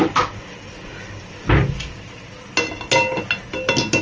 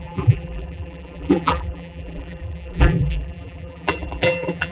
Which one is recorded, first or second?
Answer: first